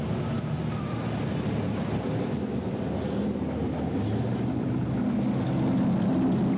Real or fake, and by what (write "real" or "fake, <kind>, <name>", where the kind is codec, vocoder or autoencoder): real